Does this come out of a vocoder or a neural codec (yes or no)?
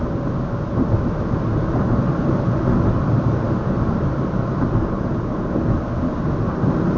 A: no